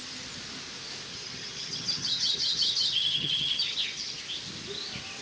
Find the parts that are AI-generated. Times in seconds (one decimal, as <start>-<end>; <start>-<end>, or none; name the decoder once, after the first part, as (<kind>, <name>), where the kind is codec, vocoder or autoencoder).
1.1-4.2 (vocoder, HiFi-GAN)